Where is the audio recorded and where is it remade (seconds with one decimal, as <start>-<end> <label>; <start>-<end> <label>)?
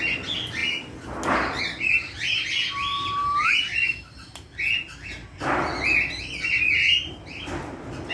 0.0-8.1 recorded